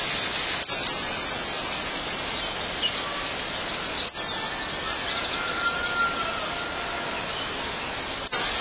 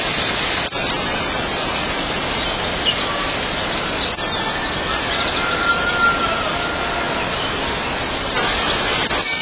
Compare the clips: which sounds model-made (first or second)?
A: second